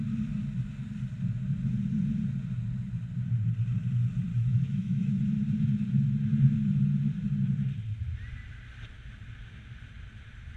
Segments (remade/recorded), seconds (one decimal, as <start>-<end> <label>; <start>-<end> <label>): 0.0-4.3 recorded; 4.3-5.2 remade; 5.2-10.6 recorded